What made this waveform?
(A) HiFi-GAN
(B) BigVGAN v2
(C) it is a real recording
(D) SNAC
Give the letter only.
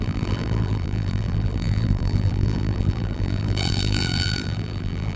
B